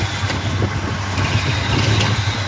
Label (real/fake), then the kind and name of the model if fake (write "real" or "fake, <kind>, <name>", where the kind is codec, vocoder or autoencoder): real